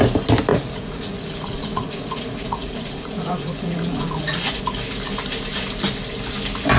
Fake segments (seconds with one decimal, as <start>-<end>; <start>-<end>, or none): 0.5-4.6